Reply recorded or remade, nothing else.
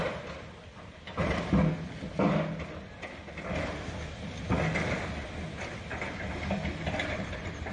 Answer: recorded